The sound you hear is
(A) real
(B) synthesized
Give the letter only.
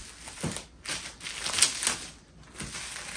A